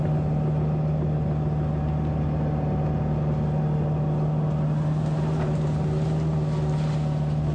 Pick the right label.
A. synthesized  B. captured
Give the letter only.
B